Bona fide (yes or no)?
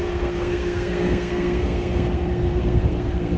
no